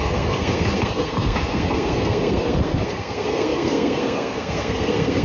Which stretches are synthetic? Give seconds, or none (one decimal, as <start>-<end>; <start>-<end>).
0.0-5.2